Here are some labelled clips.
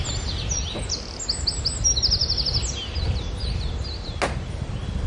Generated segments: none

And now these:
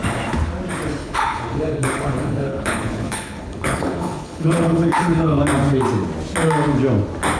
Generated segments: 1.0-5.4

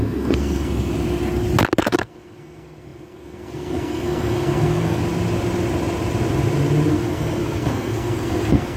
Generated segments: 0.0-0.9; 1.8-5.0; 6.9-8.8

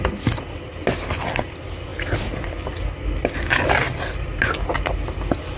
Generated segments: none

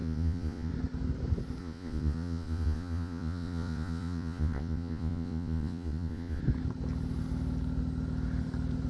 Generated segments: 0.0-0.7; 1.6-6.4

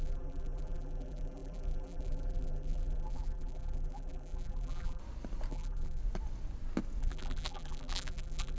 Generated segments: 0.0-5.0; 5.5-6.0; 7.0-8.6

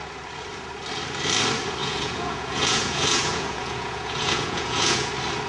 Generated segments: 1.8-5.1

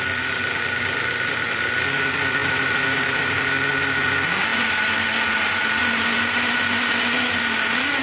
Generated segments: 2.4-3.4; 5.8-6.9